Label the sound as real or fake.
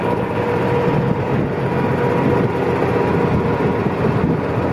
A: real